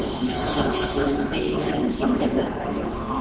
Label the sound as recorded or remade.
remade